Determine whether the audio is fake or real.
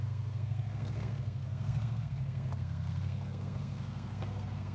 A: fake